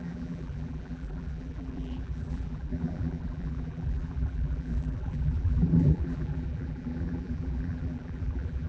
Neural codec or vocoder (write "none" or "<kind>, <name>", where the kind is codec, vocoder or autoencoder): vocoder, BigVGAN v2